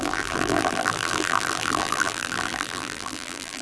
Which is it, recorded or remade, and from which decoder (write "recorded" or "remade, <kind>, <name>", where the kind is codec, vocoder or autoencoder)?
remade, vocoder, BigVGAN v2